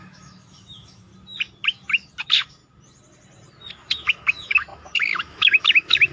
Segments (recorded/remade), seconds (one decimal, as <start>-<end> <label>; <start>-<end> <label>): 0.0-1.1 remade; 1.1-1.6 recorded; 1.6-2.6 remade; 2.6-3.7 recorded; 3.7-6.1 remade